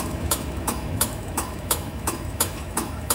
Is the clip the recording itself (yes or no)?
no